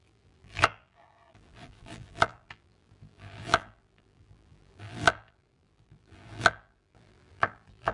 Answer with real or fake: fake